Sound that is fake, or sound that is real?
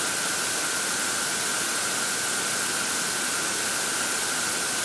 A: fake